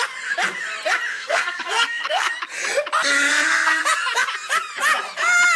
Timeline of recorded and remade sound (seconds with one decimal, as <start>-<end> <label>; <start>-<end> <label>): 0.0-1.1 recorded; 1.1-2.3 remade; 2.3-3.3 recorded; 3.3-3.8 remade; 3.8-5.6 recorded